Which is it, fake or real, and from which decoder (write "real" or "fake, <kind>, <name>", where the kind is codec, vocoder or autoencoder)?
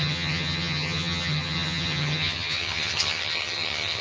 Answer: fake, vocoder, HiFi-GAN